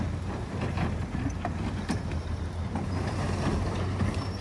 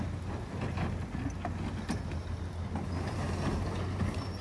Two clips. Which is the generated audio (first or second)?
first